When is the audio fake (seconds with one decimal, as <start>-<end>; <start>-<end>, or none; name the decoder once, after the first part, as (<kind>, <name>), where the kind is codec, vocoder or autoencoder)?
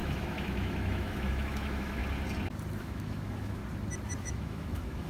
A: 0.0-2.0 (autoencoder, DAC-VAE); 2.8-3.6; 4.2-5.1